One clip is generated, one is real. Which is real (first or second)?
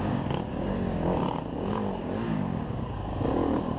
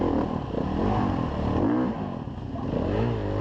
second